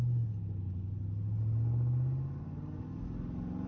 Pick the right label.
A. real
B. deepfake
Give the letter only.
A